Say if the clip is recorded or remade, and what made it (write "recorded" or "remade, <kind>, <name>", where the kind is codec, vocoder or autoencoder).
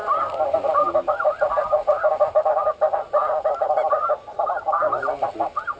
recorded